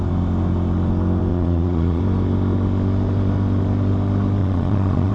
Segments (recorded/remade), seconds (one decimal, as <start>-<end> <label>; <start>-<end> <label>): 0.0-1.3 recorded; 1.3-2.0 remade; 2.0-4.4 recorded; 4.4-5.1 remade